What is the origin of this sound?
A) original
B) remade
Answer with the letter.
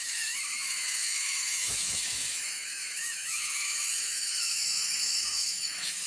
B